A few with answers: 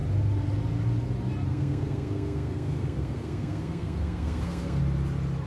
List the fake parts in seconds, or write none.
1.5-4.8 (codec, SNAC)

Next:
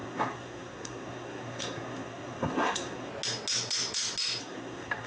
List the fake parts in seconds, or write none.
0.0-3.1 (codec, SNAC); 4.4-5.1

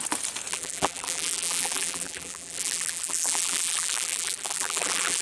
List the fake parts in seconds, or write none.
0.5-5.2 (vocoder, BigVGAN v2)

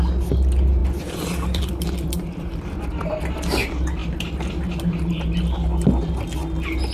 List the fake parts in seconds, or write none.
0.8-3.3 (vocoder, BigVGAN v2); 4.0-4.7

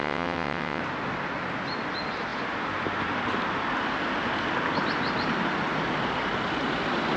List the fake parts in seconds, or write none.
0.0-0.8 (vocoder, WaveNeXt)